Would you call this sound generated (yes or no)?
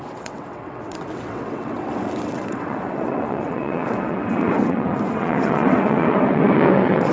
yes